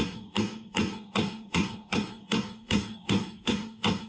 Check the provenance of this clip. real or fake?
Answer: fake